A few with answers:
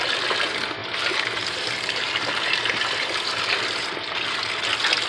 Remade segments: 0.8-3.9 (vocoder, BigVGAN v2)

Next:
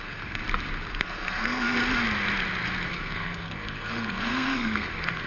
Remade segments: 0.0-0.4 (codec, SNAC); 1.0-1.8; 2.9-5.3

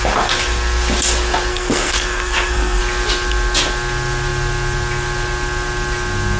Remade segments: 1.5-2.8 (codec, SNAC)

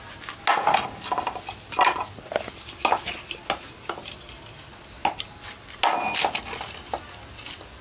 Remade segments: none

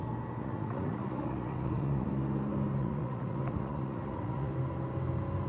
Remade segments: 0.4-2.1 (vocoder, Vocos); 2.8-4.5